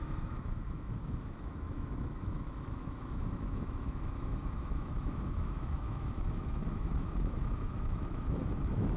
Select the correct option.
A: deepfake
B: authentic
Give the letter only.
A